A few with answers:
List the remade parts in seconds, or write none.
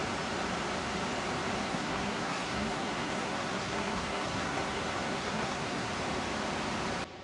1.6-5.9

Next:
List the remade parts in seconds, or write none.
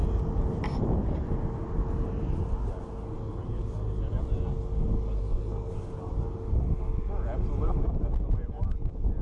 5.2-5.7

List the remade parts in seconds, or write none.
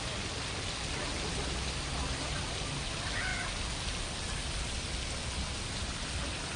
none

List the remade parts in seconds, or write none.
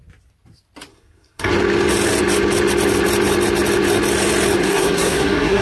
0.9-1.5; 4.6-5.6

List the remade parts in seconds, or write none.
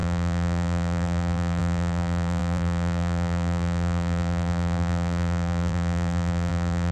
0.0-6.9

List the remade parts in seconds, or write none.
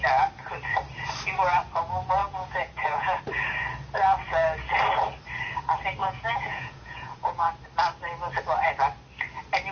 2.2-3.2; 6.0-7.5